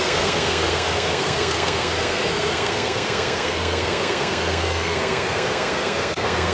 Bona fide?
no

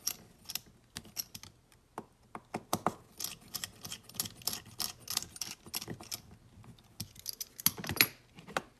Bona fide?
yes